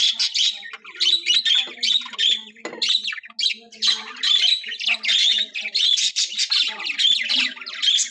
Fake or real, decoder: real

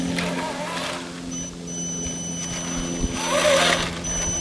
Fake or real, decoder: real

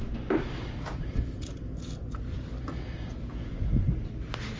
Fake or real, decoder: real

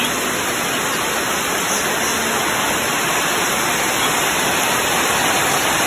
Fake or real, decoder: real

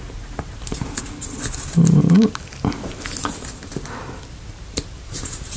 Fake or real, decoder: real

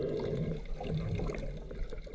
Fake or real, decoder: real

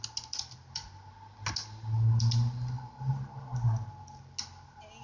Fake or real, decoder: real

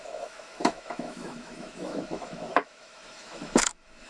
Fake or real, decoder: fake, autoencoder, DAC-VAE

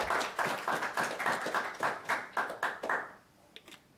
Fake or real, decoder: real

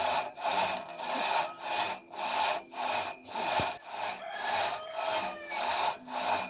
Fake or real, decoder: real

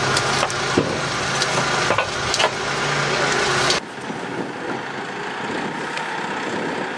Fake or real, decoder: real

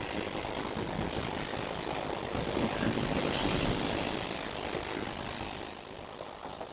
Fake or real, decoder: real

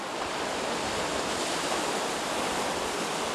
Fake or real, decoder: real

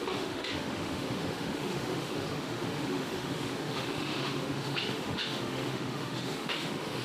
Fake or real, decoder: fake, autoencoder, DAC-VAE